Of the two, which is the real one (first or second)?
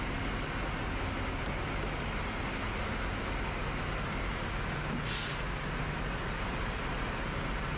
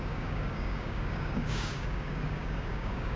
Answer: first